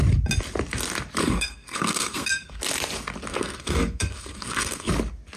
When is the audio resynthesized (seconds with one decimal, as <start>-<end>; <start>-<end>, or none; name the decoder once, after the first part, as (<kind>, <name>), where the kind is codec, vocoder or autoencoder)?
1.2-2.6 (codec, SNAC); 3.3-4.9